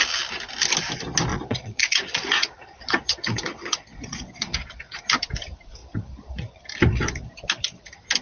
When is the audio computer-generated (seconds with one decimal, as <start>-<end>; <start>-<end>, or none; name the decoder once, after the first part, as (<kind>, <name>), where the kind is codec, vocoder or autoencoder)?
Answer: 1.3-5.0 (vocoder, Vocos); 5.8-6.6